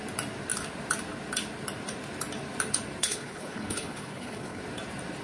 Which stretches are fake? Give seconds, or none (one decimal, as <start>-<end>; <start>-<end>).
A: 3.0-4.6